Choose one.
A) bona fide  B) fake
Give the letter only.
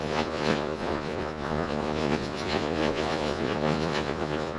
B